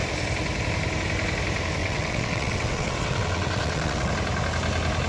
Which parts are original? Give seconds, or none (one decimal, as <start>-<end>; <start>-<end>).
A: 0.0-1.8; 4.1-5.1